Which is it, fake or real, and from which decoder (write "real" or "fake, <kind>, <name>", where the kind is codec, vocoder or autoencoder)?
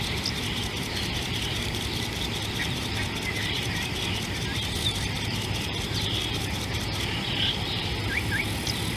real